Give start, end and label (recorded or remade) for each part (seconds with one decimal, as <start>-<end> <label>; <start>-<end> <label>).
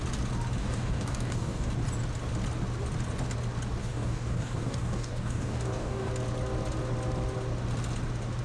0.0-0.6 recorded; 0.6-1.7 remade; 1.7-3.8 recorded; 3.8-6.1 remade; 6.1-8.4 recorded